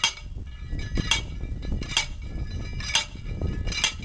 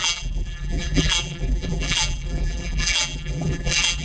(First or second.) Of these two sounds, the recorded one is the first